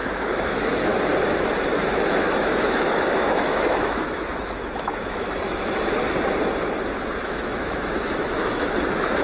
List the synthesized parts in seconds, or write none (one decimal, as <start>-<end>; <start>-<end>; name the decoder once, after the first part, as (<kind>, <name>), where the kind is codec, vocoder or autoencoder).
0.0-0.9 (autoencoder, DAC-VAE); 1.7-6.0; 7.2-9.2

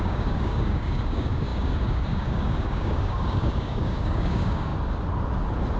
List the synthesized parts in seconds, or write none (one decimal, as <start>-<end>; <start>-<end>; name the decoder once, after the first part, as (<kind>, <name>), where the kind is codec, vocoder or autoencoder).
0.0-4.7 (codec, DAC)

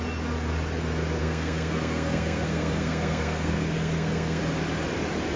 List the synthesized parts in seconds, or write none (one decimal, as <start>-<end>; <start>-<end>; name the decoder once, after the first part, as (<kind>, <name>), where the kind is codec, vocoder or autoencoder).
1.2-4.4 (codec, SNAC)

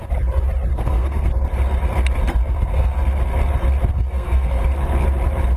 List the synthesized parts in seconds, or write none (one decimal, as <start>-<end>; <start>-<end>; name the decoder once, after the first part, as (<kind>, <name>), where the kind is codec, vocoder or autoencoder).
0.7-1.3 (codec, SNAC); 2.4-3.0; 3.9-4.6